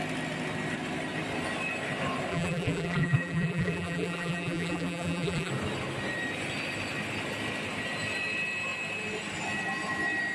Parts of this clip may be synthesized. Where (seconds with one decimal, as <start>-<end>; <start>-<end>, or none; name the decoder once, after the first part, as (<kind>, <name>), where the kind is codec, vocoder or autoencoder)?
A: 2.3-5.5 (vocoder, BigVGAN v2)

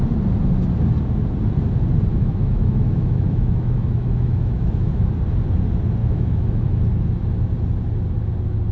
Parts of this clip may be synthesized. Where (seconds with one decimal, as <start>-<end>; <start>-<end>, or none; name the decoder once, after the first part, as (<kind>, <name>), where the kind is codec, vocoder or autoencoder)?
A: 2.1-5.1 (autoencoder, DAC-VAE); 6.0-6.8